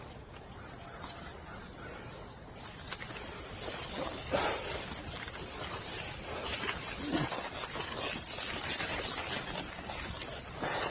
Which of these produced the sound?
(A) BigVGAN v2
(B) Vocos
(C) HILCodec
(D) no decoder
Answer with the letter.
D